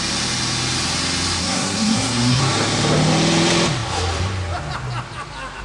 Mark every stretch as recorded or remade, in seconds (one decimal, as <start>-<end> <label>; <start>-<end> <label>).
0.0-1.4 recorded; 1.4-2.4 remade; 2.4-5.6 recorded